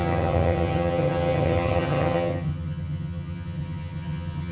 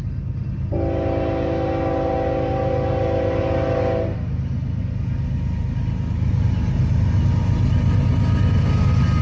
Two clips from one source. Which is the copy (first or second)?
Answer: first